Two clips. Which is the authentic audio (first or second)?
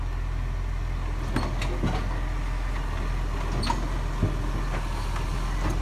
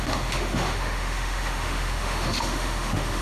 first